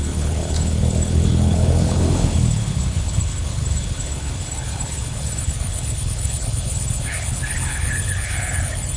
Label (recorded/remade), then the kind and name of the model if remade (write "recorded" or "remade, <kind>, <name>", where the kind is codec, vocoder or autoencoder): remade, codec, HILCodec